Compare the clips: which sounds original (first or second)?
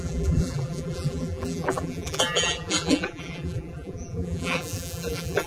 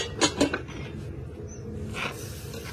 second